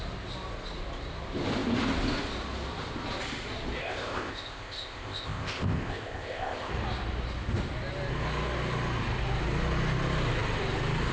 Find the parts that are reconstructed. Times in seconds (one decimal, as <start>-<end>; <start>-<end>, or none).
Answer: 3.8-6.7